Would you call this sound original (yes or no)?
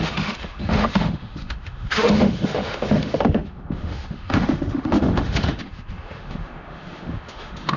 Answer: no